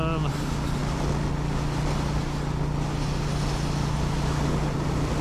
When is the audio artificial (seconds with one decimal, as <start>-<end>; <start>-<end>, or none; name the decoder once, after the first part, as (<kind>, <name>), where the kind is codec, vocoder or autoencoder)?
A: none